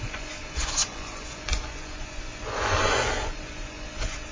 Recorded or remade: remade